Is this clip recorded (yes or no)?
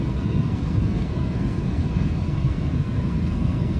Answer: no